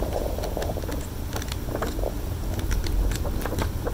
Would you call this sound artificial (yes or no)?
no